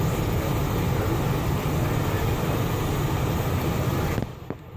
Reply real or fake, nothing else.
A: real